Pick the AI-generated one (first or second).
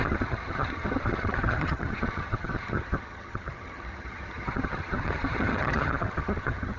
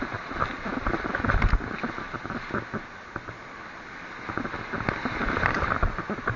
first